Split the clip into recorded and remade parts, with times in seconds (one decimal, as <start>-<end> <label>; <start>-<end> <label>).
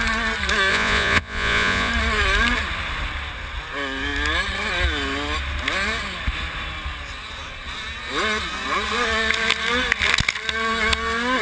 0.0-0.7 recorded; 0.7-1.9 remade; 1.9-11.4 recorded